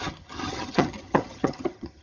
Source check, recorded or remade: remade